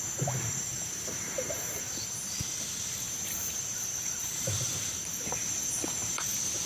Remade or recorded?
remade